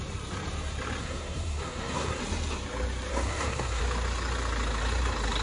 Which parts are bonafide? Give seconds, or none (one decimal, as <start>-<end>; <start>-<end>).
0.0-1.0; 2.2-3.1; 3.8-5.4